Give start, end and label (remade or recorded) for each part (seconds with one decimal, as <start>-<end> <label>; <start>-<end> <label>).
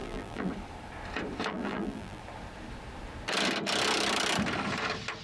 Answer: 0.0-0.5 remade; 0.5-1.5 recorded; 1.5-2.2 remade; 2.2-5.2 recorded